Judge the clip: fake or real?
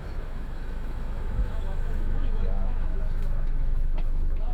fake